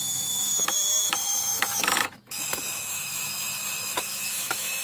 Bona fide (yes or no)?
no